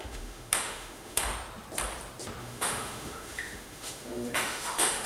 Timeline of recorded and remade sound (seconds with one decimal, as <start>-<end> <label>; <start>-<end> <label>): 0.0-1.3 remade; 1.3-2.4 recorded; 2.4-5.1 remade